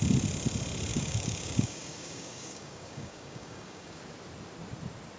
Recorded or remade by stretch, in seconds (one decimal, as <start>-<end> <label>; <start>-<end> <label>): 0.0-0.9 recorded; 0.9-4.0 remade; 4.0-5.2 recorded